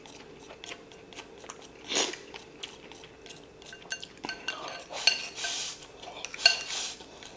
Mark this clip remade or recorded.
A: recorded